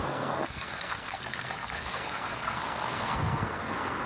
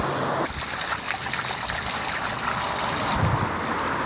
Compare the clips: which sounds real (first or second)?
second